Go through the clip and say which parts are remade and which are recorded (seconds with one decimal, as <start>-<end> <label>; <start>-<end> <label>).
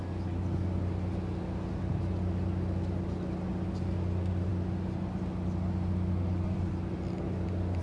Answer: 0.0-7.8 recorded